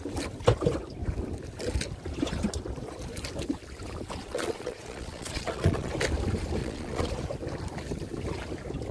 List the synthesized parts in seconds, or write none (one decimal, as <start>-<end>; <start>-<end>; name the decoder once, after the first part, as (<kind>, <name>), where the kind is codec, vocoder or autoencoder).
4.2-5.9 (vocoder, Vocos); 6.6-7.1